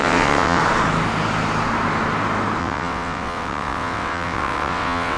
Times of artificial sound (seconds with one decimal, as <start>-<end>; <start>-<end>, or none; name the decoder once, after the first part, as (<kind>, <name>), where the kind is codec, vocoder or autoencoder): 0.0-0.6 (vocoder, WaveNeXt); 2.6-5.2